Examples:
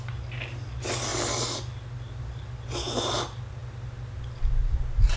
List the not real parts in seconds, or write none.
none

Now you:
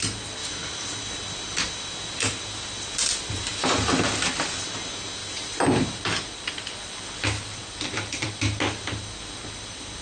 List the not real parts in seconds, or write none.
0.4-3.7 (vocoder, BigVGAN v2); 5.2-6.1; 7.6-8.3